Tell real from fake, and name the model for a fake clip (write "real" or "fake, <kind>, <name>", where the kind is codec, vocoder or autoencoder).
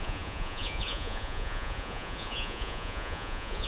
fake, vocoder, Vocos